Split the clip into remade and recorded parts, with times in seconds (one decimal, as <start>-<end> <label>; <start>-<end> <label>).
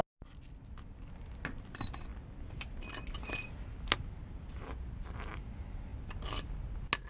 0.0-7.1 recorded